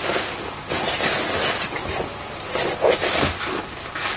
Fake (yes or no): no